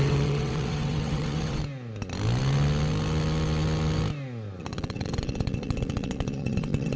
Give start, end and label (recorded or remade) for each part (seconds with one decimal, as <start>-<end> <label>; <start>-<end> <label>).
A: 0.0-1.6 remade; 1.6-4.6 recorded; 4.6-7.0 remade